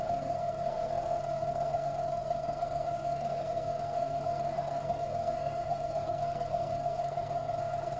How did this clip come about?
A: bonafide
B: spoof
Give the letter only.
B